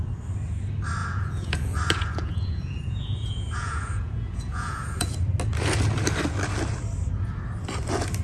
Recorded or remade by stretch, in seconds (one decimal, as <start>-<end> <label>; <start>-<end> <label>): 0.0-1.0 recorded; 1.0-5.1 remade; 5.1-8.2 recorded